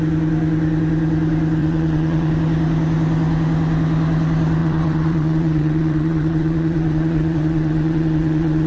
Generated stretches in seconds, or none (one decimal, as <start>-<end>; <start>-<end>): 1.6-2.3; 4.6-8.7